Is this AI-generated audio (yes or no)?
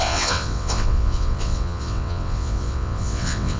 yes